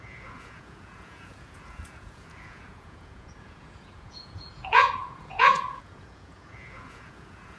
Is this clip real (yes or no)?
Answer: no